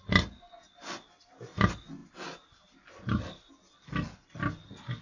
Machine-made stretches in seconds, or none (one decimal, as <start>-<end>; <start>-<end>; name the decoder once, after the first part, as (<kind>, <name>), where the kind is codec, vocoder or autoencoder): none